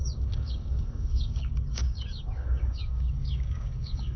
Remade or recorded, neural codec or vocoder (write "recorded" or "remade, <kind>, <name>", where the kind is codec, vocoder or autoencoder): remade, codec, DAC